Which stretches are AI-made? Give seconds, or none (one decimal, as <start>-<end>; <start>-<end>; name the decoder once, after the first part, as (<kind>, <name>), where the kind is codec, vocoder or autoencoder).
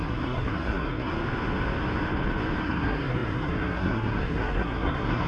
0.0-1.1 (codec, SNAC); 2.6-5.3